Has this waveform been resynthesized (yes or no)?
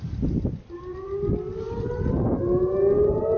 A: no